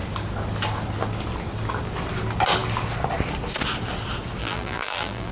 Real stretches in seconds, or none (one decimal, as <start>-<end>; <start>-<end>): 0.0-4.4